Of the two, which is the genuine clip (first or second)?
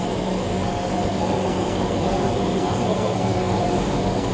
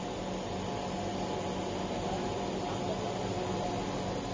second